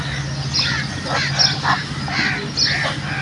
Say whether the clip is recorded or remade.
recorded